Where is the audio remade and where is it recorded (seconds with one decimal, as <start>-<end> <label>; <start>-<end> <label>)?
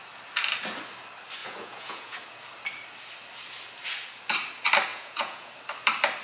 0.0-1.4 recorded; 1.4-2.2 remade; 2.2-4.9 recorded; 4.9-5.5 remade; 5.5-6.2 recorded